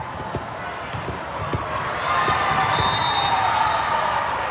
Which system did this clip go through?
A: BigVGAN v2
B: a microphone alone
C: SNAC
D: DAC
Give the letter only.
B